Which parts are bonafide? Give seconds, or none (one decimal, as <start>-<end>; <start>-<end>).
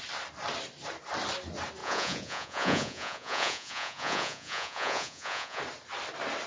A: 0.0-1.8; 5.6-6.5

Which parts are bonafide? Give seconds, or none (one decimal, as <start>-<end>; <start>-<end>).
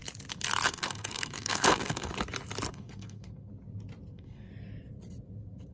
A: 0.0-0.7; 2.1-2.7; 3.5-4.1; 4.5-5.7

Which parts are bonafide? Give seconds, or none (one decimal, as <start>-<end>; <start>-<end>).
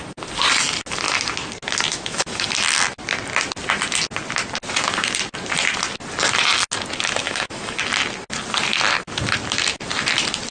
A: 0.0-1.9; 2.5-7.2; 7.8-10.5